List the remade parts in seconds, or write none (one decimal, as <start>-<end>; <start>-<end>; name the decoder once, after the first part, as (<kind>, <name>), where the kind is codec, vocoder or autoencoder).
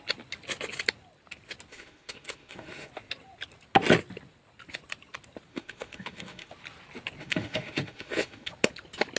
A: 1.7-2.9 (autoencoder, DAC-VAE); 5.5-6.5; 7.2-8.5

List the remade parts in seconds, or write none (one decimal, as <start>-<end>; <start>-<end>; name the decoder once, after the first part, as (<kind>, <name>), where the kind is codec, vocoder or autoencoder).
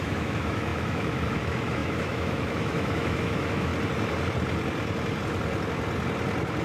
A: 0.0-3.7 (autoencoder, DAC-VAE)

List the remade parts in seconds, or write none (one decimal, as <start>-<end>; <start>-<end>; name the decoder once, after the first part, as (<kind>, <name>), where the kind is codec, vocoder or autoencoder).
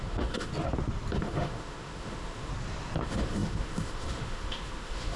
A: 0.0-0.5 (autoencoder, DAC-VAE); 1.2-2.5; 3.0-5.2